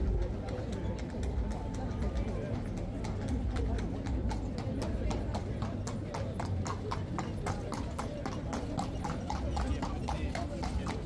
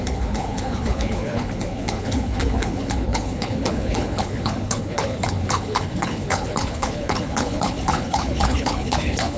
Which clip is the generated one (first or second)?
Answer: second